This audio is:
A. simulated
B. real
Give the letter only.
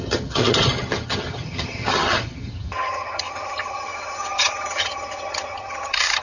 A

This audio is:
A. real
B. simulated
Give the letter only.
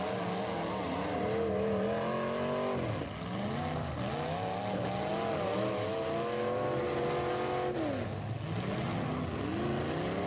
A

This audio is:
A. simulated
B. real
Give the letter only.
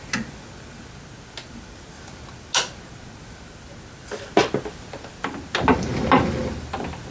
B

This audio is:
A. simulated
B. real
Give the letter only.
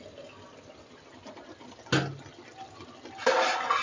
B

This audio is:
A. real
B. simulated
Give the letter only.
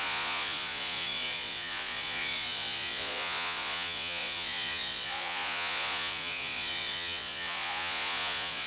B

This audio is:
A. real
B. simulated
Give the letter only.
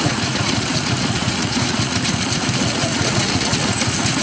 B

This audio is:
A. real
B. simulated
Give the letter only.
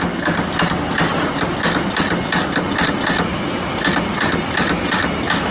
A